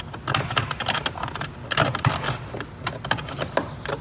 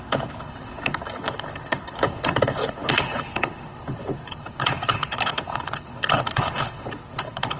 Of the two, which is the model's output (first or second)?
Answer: second